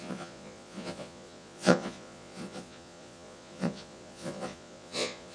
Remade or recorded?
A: remade